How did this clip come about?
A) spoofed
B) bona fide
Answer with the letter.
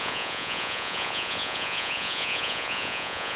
A